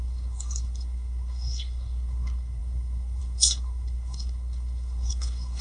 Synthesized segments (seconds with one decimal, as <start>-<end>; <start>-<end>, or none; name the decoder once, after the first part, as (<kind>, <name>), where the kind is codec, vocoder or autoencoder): 0.0-5.6 (codec, SNAC)